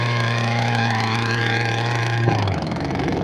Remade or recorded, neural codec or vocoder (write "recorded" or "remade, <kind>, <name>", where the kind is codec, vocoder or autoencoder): remade, autoencoder, DAC-VAE